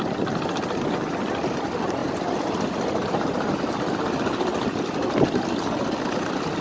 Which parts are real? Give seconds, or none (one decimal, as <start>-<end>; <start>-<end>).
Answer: 0.0-6.6